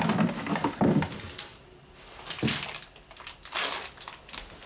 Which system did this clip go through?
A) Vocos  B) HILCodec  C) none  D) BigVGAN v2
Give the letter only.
C